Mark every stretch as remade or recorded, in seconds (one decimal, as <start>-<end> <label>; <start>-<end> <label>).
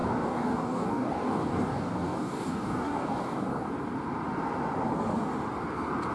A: 0.0-3.7 remade; 3.7-6.1 recorded